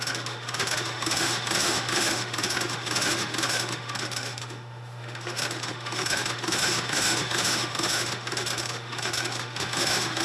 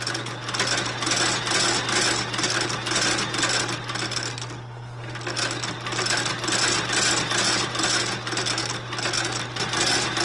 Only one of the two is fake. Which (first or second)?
first